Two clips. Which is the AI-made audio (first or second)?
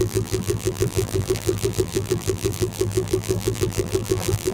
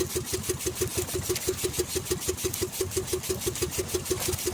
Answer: first